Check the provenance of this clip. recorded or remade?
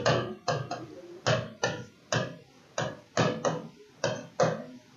recorded